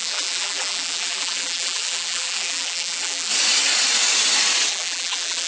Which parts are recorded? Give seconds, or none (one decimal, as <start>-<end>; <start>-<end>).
3.3-4.7